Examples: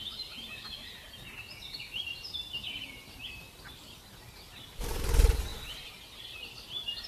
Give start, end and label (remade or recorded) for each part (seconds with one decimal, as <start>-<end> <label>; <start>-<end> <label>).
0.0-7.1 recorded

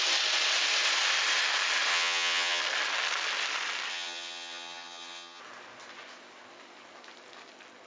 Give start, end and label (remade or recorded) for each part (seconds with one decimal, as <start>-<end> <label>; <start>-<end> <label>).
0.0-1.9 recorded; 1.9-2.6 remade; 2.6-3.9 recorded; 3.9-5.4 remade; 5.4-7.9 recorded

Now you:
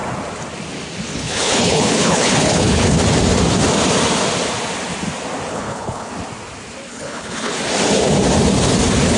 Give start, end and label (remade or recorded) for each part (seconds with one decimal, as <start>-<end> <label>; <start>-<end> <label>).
0.0-1.1 recorded; 1.1-3.0 remade; 3.0-5.5 recorded; 5.5-6.1 remade; 6.1-6.9 recorded; 6.9-7.5 remade; 7.5-9.2 recorded

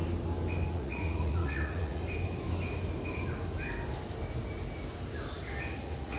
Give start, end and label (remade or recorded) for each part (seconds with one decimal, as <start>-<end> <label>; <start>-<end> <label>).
0.0-0.7 recorded; 0.7-2.0 remade; 2.0-5.7 recorded; 5.7-6.2 remade